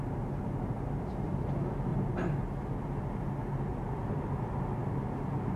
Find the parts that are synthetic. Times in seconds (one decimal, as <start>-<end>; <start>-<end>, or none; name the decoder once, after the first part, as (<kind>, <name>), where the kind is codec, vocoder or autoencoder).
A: 3.7-4.3 (vocoder, BigVGAN v2)